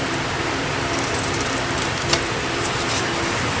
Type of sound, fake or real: fake